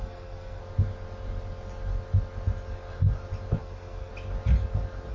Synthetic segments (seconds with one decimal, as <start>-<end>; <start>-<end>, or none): 0.0-0.6; 3.6-4.1